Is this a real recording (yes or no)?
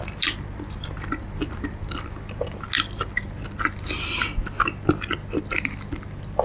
yes